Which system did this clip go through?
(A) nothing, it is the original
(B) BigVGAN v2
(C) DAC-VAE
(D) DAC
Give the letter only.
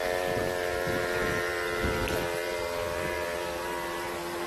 A